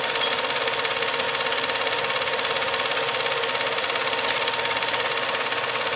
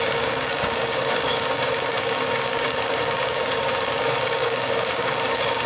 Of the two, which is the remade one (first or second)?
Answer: second